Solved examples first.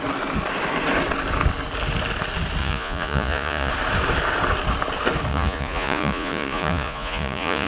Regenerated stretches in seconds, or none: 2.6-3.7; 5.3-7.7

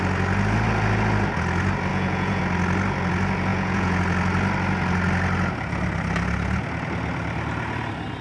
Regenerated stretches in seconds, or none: 1.9-2.4; 3.5-4.0

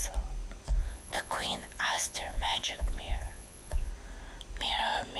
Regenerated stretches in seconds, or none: 0.8-3.9

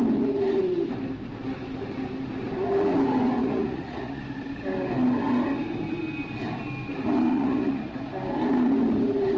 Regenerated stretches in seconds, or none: 3.4-4.2; 7.3-8.0

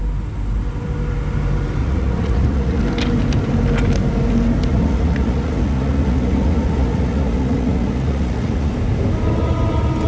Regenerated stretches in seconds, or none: 1.8-2.8; 4.7-8.7

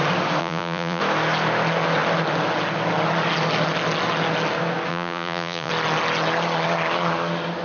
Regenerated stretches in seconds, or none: 0.4-1.0; 4.9-5.7